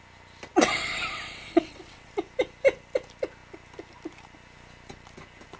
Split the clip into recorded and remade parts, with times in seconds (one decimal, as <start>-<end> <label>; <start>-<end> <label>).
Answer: 0.0-0.5 recorded; 0.5-2.1 remade; 2.1-5.6 recorded